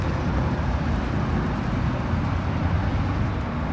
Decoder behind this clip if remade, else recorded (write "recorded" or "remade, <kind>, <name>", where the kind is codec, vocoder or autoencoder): recorded